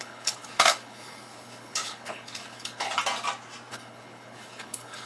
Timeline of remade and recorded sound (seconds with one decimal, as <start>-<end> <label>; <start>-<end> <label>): 0.0-3.0 remade; 3.0-3.7 recorded; 3.7-5.1 remade